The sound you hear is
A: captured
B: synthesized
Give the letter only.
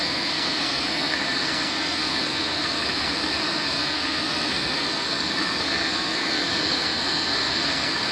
B